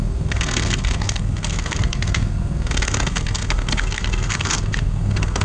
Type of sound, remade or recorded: remade